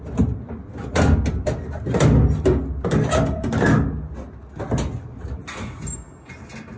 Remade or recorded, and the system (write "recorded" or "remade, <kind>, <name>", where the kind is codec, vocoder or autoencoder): recorded